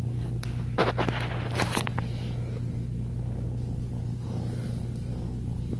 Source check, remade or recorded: recorded